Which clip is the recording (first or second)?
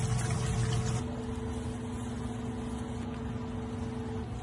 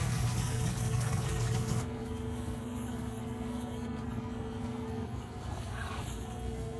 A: first